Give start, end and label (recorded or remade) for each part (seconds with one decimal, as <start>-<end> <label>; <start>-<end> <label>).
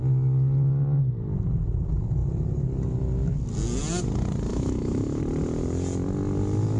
0.0-4.5 recorded; 4.5-5.2 remade; 5.2-6.8 recorded